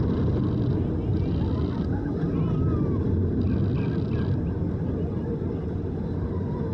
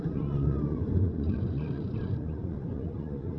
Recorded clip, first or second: first